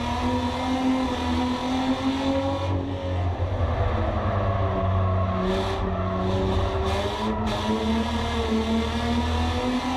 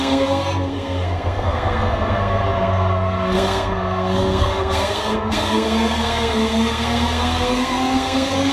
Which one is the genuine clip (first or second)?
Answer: first